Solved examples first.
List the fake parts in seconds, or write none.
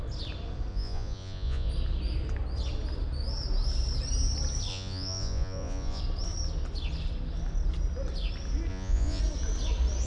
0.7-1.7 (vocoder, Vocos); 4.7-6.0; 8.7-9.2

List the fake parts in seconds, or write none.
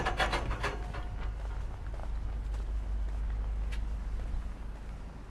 none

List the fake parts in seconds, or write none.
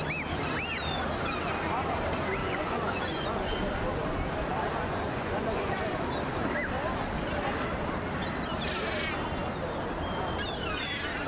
2.4-3.6 (vocoder, Vocos); 4.8-5.9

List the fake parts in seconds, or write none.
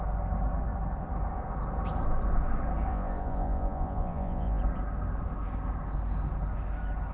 2.9-4.6 (vocoder, Vocos)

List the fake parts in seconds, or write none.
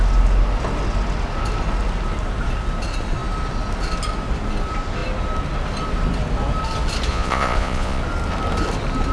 7.1-8.0 (vocoder, Vocos)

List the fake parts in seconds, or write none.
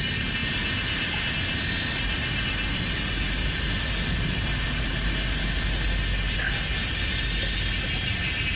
none